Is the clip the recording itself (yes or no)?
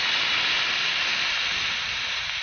yes